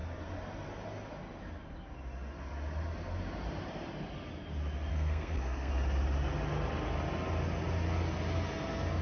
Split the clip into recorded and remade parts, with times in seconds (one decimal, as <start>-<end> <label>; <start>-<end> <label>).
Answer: 0.0-4.9 recorded; 4.9-5.7 remade; 5.7-9.0 recorded